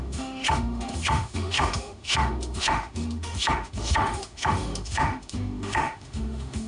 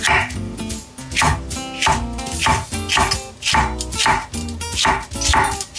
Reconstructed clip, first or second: first